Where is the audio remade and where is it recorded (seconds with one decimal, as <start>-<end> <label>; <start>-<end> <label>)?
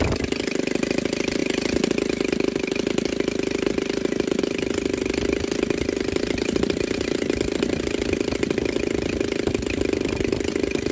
0.0-10.9 recorded